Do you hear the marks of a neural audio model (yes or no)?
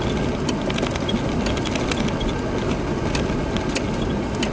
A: no